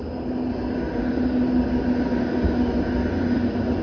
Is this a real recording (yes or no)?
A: yes